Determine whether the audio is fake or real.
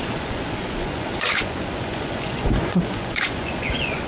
fake